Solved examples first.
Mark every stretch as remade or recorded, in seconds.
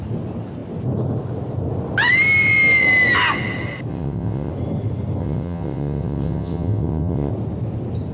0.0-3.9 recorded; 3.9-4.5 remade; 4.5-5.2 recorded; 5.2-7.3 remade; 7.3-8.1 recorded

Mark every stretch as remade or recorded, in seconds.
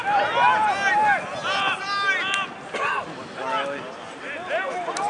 0.0-5.1 recorded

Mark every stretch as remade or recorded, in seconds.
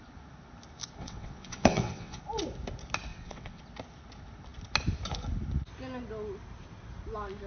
0.0-1.0 recorded; 1.0-2.2 remade; 2.2-3.1 recorded; 3.1-3.6 remade; 3.6-7.5 recorded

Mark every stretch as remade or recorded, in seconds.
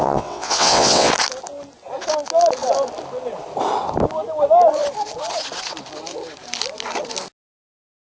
0.0-1.1 remade; 1.1-8.1 recorded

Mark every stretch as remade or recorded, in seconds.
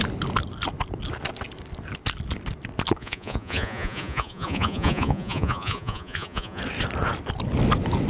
0.0-3.0 recorded; 3.0-6.6 remade; 6.6-8.1 recorded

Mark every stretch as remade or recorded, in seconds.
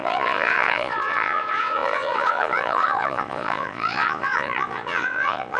0.0-5.6 remade